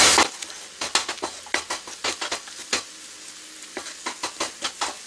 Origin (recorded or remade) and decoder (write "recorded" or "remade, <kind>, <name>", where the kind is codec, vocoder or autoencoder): recorded